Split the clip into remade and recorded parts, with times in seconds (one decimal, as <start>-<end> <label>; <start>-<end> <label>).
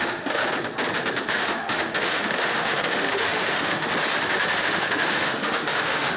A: 0.0-0.4 remade; 0.4-1.2 recorded; 1.2-3.9 remade; 3.9-4.6 recorded; 4.6-6.2 remade